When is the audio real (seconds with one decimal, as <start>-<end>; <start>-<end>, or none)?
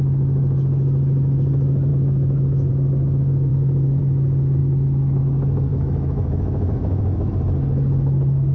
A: 0.0-1.9; 2.7-3.5; 4.0-5.7; 7.3-8.5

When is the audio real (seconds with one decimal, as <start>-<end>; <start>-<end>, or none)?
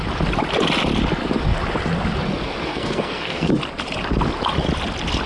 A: 0.0-2.7; 3.5-5.3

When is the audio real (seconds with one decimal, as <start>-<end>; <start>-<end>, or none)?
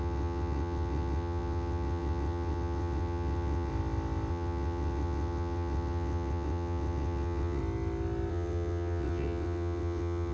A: 3.7-4.3; 7.6-8.3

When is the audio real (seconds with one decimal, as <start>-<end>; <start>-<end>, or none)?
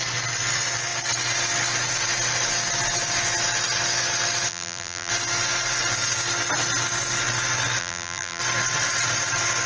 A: 0.0-4.5; 5.1-7.8; 8.4-9.7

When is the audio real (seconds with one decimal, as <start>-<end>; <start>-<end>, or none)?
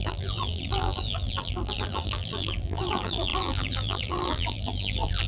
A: none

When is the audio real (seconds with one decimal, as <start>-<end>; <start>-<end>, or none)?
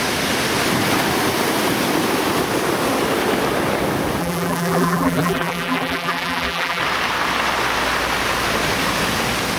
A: 0.0-4.2; 6.8-9.6